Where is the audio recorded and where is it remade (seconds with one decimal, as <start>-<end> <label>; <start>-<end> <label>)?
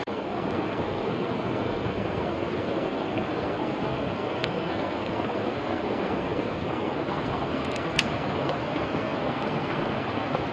0.0-10.5 remade